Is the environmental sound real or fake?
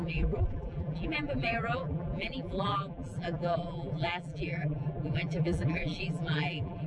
fake